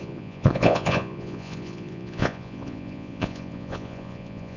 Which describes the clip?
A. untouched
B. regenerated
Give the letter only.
B